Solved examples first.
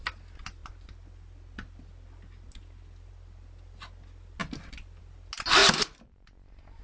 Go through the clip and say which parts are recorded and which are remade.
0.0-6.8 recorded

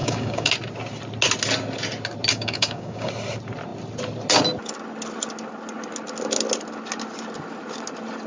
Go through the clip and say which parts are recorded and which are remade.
0.0-0.5 remade; 0.5-2.3 recorded; 2.3-3.1 remade; 3.1-8.3 recorded

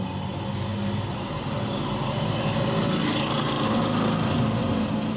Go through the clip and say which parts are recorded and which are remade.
0.0-0.7 recorded; 0.7-2.6 remade; 2.6-3.0 recorded; 3.0-3.8 remade; 3.8-5.2 recorded

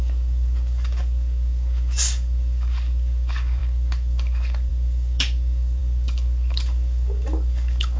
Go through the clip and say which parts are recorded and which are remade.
0.0-8.0 remade

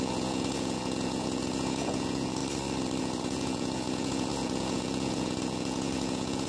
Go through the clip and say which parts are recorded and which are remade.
0.0-2.4 remade; 2.4-3.0 recorded; 3.0-6.5 remade

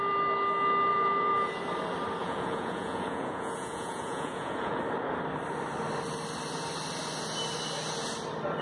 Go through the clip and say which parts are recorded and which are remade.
0.0-0.9 recorded; 0.9-1.6 remade; 1.6-2.2 recorded; 2.2-4.8 remade; 4.8-8.6 recorded

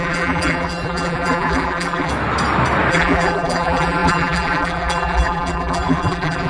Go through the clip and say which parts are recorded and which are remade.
0.0-2.1 remade; 2.1-2.9 recorded; 2.9-6.5 remade